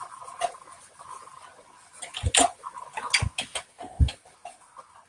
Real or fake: real